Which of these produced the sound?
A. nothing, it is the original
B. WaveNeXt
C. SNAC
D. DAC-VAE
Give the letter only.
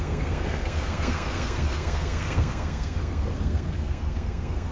C